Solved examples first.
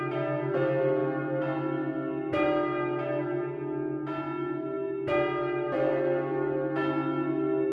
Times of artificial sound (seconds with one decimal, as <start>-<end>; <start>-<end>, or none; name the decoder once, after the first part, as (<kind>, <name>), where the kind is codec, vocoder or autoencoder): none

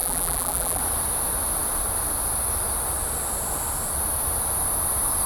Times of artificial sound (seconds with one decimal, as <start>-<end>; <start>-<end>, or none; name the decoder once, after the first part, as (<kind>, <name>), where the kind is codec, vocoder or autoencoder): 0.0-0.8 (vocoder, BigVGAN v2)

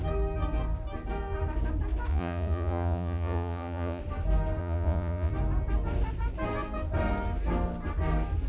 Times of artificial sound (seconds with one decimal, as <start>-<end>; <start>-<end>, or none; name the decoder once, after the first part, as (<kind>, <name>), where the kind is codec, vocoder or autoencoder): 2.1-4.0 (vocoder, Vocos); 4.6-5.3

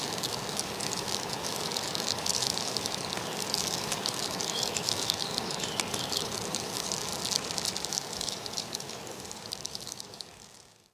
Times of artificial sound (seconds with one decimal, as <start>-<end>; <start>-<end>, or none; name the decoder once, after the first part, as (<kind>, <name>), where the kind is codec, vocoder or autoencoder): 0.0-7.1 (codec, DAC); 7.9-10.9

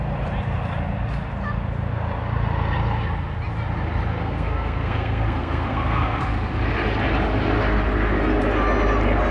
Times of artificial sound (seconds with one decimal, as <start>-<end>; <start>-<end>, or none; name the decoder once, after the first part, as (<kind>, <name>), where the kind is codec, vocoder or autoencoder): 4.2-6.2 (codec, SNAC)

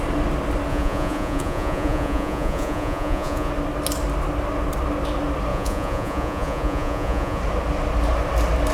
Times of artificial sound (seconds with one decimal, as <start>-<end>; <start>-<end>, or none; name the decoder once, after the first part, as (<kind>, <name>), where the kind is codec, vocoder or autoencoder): 0.7-3.5 (vocoder, Vocos); 5.5-7.4